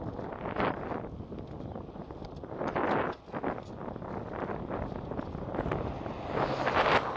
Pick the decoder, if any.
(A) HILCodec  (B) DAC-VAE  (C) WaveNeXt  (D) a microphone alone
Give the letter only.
D